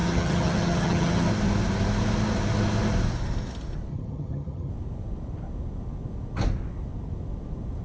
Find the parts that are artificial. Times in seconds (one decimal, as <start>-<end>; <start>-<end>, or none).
0.0-1.3; 3.9-4.7